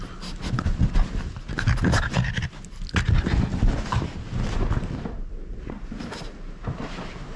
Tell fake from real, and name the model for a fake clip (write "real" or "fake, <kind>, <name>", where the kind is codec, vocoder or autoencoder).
real